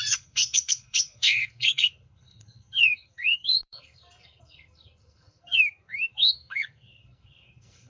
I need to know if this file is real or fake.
fake